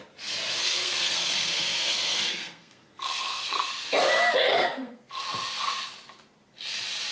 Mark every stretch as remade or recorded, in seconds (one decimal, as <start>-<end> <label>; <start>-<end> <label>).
0.0-0.6 recorded; 0.6-3.7 remade; 3.7-4.5 recorded; 4.5-5.2 remade; 5.2-7.1 recorded